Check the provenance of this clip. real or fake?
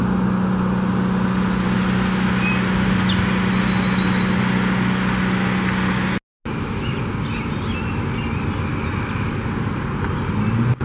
real